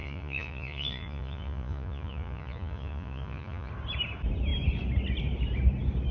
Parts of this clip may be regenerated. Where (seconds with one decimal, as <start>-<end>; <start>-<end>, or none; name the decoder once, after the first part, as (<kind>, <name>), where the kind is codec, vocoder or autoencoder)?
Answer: 0.0-3.7 (vocoder, Vocos)